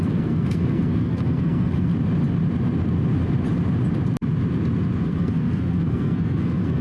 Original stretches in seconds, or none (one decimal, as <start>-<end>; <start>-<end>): 1.9-5.0